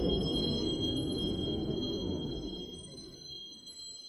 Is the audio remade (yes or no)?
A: yes